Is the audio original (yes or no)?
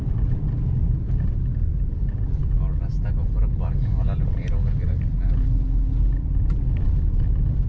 yes